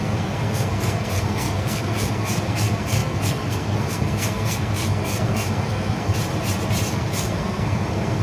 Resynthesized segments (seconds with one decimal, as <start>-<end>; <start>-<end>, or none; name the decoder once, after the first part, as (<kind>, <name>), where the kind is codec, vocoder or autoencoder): 0.0-6.1 (codec, SNAC); 6.9-8.2